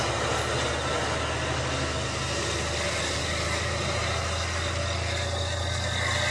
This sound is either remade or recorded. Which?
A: recorded